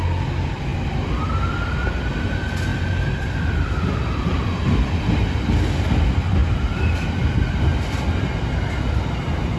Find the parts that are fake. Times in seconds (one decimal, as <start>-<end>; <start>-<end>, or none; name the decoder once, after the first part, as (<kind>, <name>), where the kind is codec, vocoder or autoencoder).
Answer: none